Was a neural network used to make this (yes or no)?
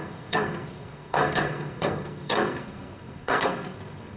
yes